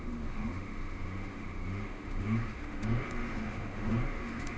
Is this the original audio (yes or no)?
no